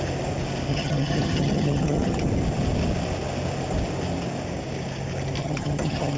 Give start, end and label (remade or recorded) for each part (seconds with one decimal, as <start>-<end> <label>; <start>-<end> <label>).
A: 0.0-0.7 recorded; 0.7-2.3 remade; 2.3-5.4 recorded; 5.4-6.2 remade